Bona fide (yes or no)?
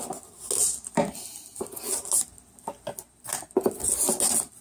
yes